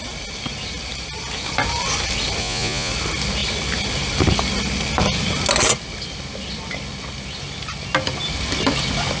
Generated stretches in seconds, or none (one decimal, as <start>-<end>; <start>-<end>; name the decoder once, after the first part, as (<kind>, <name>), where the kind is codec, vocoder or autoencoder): 2.4-2.9 (vocoder, Vocos)